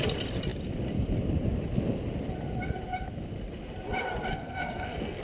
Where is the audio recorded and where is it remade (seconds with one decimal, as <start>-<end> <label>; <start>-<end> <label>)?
0.0-4.3 recorded; 4.3-5.2 remade